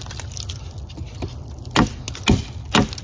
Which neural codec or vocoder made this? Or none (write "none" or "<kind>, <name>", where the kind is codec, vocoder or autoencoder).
none